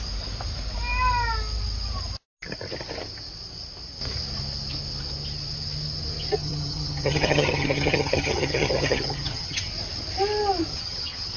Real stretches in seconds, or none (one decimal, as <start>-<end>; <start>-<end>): 0.0-6.4; 9.7-10.7